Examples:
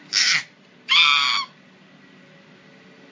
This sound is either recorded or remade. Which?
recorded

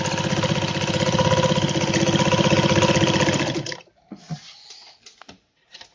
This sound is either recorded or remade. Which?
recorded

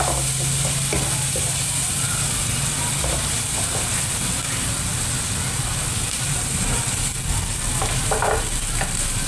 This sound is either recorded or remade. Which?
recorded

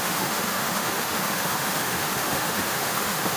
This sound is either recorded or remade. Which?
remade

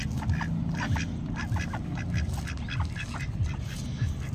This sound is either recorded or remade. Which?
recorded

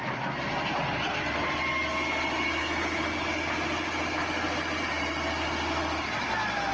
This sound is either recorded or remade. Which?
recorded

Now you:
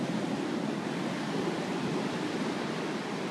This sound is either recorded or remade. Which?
recorded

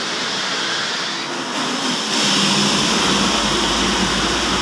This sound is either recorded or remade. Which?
recorded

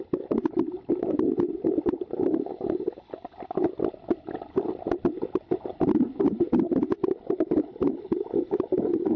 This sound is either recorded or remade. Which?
recorded